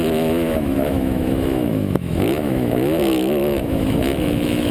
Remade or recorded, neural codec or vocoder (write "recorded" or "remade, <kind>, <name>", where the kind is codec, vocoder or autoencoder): remade, autoencoder, DAC-VAE